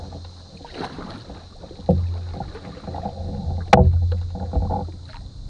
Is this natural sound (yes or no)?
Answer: yes